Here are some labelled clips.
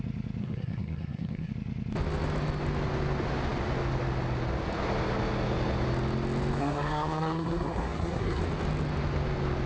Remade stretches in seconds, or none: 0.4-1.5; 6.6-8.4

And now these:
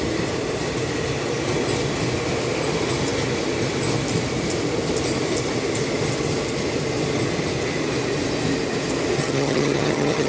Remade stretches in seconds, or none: 9.2-10.3

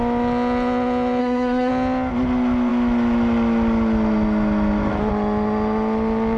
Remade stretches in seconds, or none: 1.2-1.7

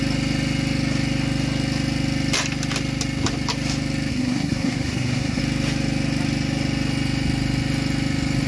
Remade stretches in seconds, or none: 4.1-5.4